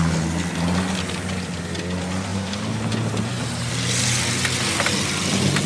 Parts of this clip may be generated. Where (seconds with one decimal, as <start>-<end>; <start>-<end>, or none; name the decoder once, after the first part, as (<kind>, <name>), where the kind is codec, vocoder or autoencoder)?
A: 2.3-3.7 (vocoder, BigVGAN v2)